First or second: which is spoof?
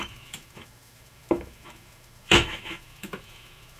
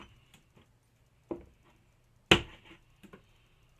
first